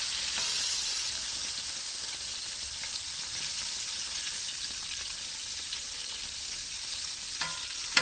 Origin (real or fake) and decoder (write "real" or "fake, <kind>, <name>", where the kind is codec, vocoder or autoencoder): real